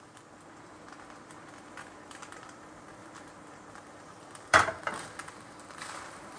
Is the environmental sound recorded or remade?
remade